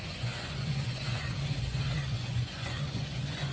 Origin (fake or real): fake